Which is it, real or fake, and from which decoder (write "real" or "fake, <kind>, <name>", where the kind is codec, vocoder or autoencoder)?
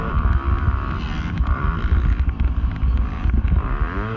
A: real